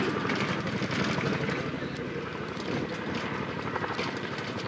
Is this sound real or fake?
real